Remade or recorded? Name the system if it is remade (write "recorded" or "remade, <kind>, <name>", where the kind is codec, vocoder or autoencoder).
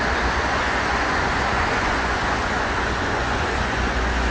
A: remade, vocoder, Vocos